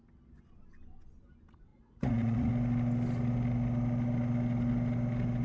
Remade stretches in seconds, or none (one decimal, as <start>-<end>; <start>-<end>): 1.7-2.5